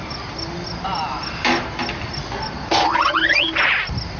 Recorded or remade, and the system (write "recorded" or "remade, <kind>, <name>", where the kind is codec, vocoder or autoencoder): recorded